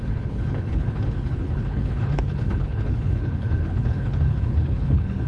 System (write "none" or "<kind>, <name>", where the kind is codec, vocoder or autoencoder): codec, HILCodec